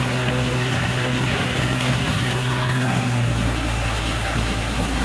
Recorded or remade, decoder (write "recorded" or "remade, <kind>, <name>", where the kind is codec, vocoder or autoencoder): remade, codec, SNAC